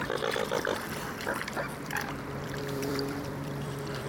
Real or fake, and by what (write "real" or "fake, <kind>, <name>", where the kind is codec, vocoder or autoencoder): fake, vocoder, BigVGAN v2